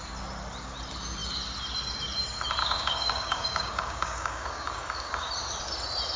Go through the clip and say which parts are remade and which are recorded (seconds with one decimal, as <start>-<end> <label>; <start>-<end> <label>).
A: 0.0-2.6 recorded; 2.6-5.3 remade; 5.3-6.2 recorded